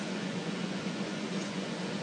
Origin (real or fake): fake